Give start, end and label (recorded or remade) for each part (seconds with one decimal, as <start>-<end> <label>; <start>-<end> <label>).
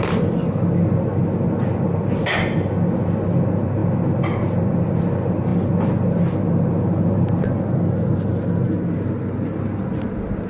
0.0-10.5 recorded